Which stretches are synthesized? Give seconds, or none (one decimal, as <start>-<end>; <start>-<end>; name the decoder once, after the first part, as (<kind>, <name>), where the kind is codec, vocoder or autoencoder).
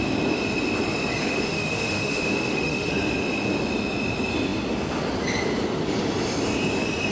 1.2-2.9 (autoencoder, DAC-VAE)